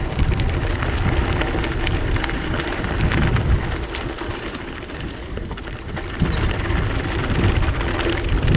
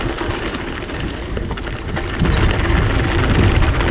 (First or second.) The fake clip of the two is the first